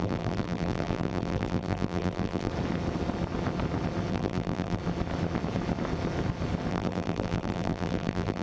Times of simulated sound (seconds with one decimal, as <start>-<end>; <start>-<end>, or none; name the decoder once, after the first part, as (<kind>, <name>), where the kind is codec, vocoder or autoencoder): 0.0-2.5 (vocoder, BigVGAN v2); 4.1-4.8; 6.7-8.4